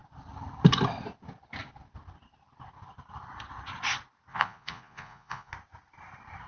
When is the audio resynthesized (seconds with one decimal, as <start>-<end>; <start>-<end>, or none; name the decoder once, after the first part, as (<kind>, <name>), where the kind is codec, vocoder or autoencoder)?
4.3-5.5 (vocoder, Vocos)